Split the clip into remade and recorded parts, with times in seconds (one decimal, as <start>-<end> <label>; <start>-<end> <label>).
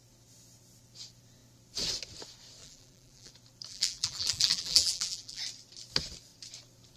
0.0-2.6 recorded; 2.6-3.3 remade; 3.3-3.7 recorded; 3.7-5.4 remade; 5.4-7.0 recorded